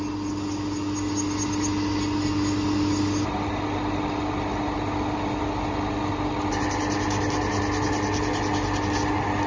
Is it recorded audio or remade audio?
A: recorded